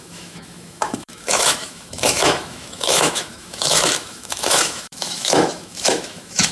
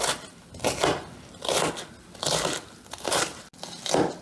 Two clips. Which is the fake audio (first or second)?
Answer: first